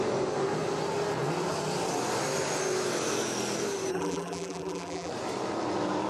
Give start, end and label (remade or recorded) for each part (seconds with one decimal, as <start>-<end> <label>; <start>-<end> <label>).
0.0-3.9 recorded; 3.9-5.1 remade; 5.1-6.1 recorded